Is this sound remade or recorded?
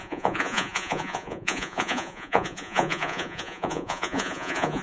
remade